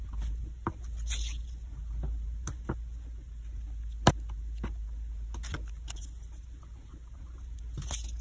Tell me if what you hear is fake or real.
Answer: real